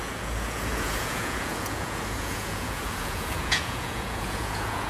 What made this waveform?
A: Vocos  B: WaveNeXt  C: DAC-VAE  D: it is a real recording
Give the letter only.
A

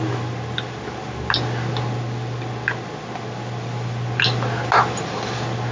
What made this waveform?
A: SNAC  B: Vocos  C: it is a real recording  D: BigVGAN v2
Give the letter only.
C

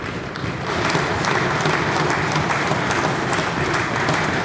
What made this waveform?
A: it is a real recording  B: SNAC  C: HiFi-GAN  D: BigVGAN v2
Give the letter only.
D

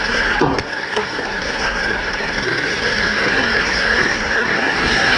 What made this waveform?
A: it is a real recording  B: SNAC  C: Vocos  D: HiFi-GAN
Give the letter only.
B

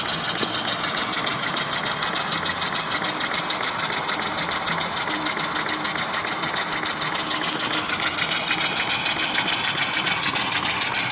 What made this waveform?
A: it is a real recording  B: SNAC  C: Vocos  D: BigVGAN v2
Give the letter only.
A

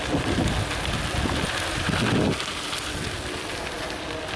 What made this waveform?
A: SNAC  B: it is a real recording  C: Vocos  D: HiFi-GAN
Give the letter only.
B